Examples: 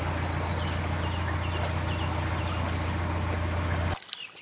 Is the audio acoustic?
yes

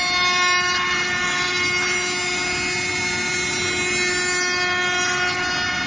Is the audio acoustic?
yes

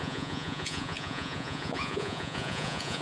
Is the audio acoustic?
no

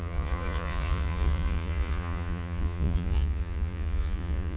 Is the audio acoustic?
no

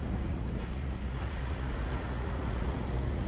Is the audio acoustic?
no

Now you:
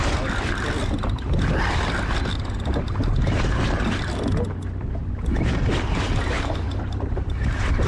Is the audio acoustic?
yes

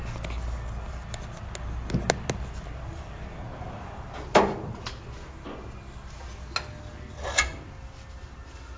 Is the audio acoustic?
yes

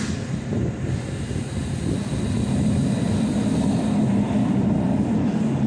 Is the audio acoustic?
yes